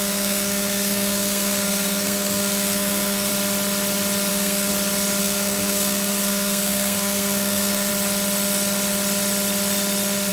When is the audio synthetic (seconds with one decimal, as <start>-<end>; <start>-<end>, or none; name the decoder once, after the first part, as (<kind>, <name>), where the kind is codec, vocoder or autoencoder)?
0.0-3.3 (codec, SNAC); 4.3-4.7; 5.2-7.9